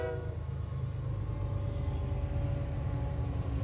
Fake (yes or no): no